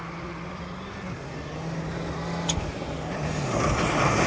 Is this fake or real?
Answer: real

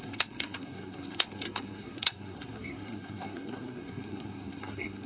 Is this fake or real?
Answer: fake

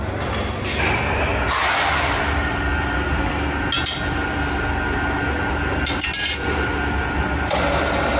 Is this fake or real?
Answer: real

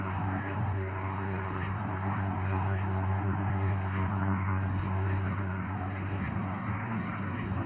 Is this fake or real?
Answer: fake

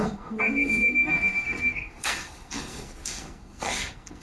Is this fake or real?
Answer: fake